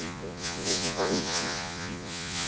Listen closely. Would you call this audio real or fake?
fake